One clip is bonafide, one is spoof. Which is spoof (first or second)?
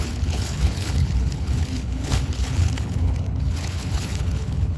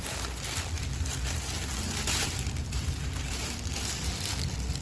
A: first